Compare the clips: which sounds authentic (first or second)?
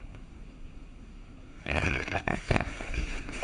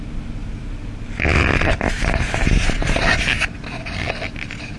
second